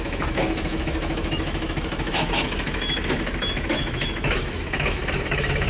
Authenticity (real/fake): fake